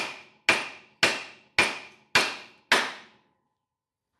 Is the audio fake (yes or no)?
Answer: no